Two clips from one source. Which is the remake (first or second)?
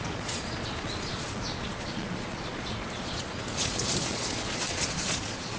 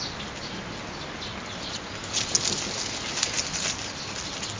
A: first